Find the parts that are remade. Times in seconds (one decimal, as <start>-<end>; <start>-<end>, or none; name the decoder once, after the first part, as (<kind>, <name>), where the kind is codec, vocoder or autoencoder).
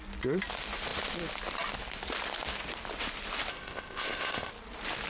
3.5-4.5 (codec, ZipCodec)